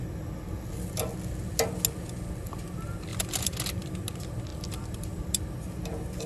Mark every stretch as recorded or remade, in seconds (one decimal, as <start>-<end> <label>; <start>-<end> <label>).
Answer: 0.0-3.1 recorded; 3.1-3.9 remade; 3.9-4.5 recorded; 4.5-5.4 remade; 5.4-6.3 recorded